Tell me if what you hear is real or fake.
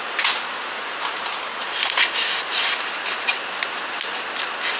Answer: real